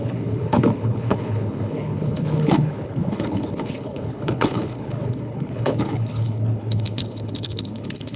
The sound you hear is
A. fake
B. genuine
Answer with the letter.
A